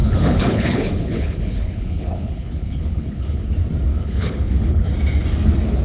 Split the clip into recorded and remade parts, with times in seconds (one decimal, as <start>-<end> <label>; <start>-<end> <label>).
0.0-3.5 remade; 3.5-3.9 recorded; 3.9-4.9 remade; 4.9-5.8 recorded